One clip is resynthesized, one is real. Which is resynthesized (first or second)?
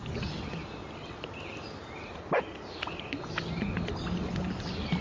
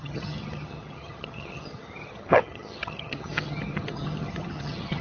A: second